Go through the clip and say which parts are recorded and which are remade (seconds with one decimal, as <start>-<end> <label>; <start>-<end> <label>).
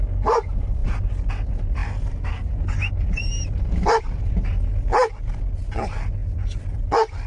0.0-7.3 recorded